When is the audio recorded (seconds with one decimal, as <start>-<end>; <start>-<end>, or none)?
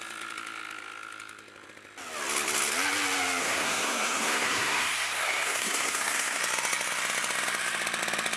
0.0-3.4; 6.4-8.4